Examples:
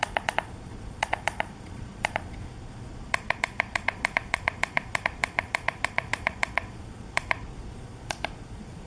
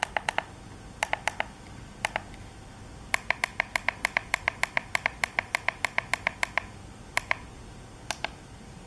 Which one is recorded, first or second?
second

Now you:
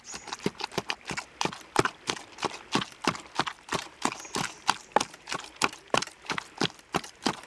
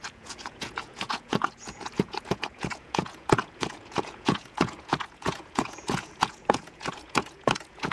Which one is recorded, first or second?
first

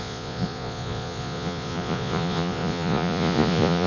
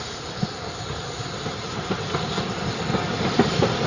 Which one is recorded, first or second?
second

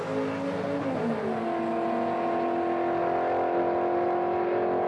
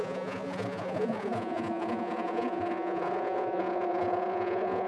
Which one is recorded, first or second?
first